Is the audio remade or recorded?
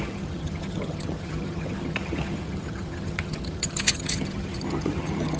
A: remade